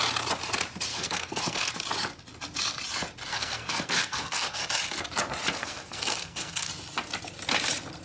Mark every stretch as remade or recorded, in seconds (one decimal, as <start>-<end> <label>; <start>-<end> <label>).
0.0-0.9 recorded; 0.9-1.7 remade; 1.7-3.3 recorded; 3.3-4.6 remade; 4.6-5.6 recorded; 5.6-6.7 remade; 6.7-8.0 recorded